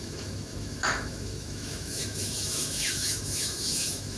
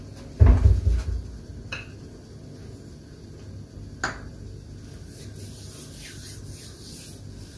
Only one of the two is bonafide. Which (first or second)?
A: second